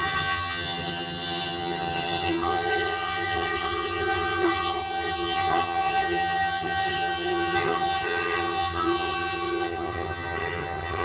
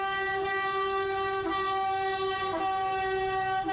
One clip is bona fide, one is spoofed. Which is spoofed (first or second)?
first